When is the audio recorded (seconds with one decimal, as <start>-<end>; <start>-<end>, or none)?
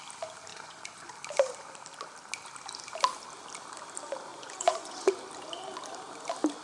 0.0-0.5; 1.1-4.3; 5.1-6.6